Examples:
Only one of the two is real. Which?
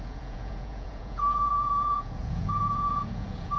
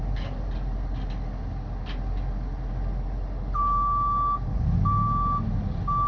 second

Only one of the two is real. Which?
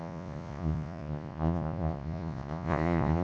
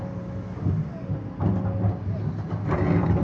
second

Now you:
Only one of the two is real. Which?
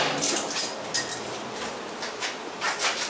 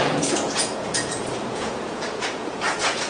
first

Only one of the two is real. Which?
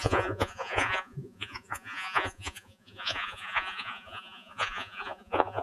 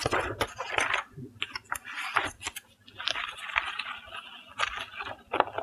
second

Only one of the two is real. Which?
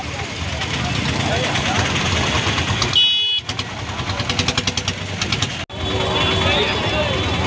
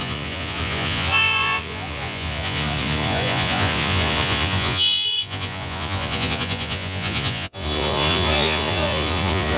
first